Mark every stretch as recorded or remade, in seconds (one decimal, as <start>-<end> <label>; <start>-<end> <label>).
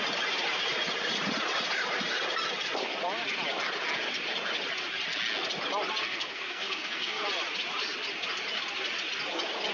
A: 0.0-6.0 recorded; 6.0-7.2 remade; 7.2-9.7 recorded